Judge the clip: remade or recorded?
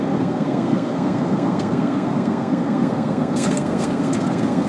remade